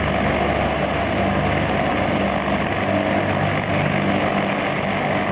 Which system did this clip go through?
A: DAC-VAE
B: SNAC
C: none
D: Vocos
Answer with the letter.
C